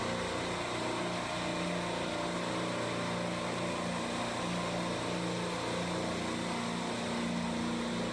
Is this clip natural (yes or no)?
yes